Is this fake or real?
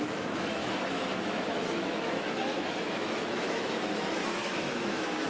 fake